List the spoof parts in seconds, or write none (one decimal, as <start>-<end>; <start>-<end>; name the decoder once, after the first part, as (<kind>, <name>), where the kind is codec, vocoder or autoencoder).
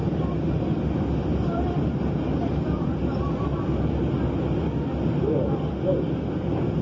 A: 0.0-0.6 (vocoder, BigVGAN v2); 1.3-3.2